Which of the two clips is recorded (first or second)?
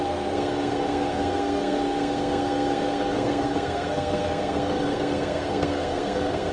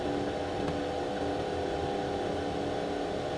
second